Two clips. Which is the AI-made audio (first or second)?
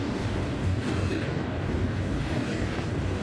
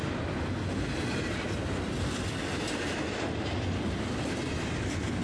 first